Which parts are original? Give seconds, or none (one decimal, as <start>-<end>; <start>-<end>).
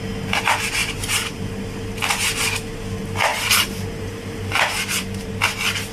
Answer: 0.0-0.8; 1.4-3.3; 5.3-5.9